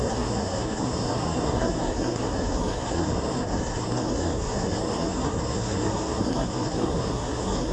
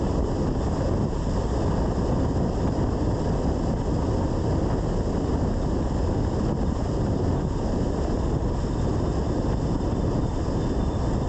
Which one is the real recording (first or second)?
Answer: second